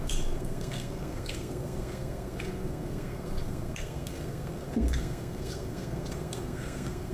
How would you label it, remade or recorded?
remade